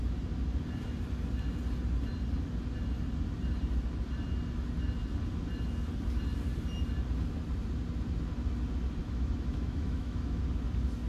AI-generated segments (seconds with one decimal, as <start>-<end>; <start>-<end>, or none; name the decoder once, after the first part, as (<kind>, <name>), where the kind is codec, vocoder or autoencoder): 9.0-10.4 (autoencoder, DAC-VAE)